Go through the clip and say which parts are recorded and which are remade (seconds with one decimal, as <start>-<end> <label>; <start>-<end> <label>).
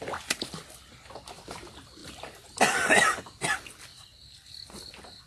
0.0-2.0 recorded; 2.0-3.2 remade; 3.2-5.3 recorded